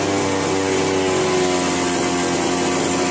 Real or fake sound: real